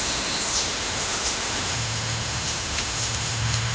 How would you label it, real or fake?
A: fake